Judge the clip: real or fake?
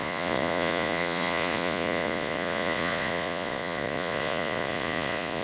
fake